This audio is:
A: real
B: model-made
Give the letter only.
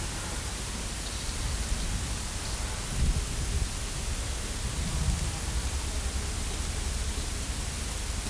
A